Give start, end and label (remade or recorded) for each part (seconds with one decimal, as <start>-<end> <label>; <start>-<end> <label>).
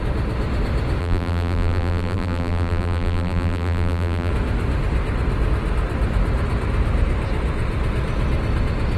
0.0-1.0 recorded; 1.0-4.3 remade; 4.3-9.0 recorded